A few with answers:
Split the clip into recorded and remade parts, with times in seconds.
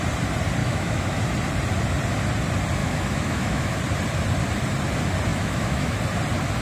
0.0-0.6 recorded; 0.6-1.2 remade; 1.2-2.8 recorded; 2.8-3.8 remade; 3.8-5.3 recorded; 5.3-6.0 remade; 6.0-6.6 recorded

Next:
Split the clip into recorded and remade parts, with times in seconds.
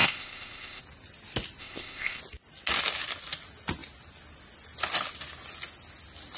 0.0-0.8 remade; 0.8-1.6 recorded; 1.6-2.2 remade; 2.2-6.4 recorded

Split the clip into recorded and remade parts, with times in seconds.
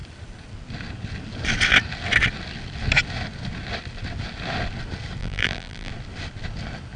0.0-5.2 recorded; 5.2-5.9 remade; 5.9-7.0 recorded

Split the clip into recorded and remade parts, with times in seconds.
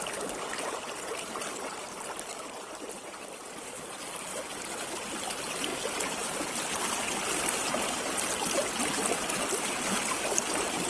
0.0-10.9 recorded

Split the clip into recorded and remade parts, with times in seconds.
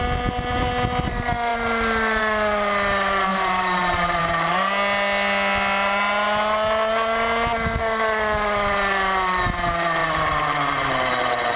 0.0-3.3 recorded; 3.3-4.2 remade; 4.2-10.0 recorded; 10.0-10.9 remade; 10.9-11.6 recorded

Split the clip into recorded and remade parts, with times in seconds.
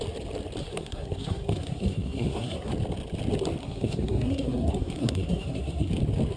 0.0-0.6 recorded; 0.6-2.7 remade; 2.7-3.6 recorded; 3.6-5.9 remade; 5.9-6.4 recorded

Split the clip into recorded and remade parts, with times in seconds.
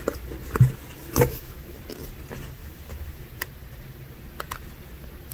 0.0-1.0 recorded; 1.0-1.8 remade; 1.8-2.6 recorded; 2.6-3.2 remade; 3.2-5.3 recorded